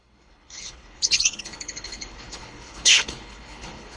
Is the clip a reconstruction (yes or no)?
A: yes